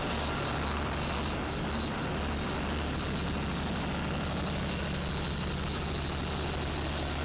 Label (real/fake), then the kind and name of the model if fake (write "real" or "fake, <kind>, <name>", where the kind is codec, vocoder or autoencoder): real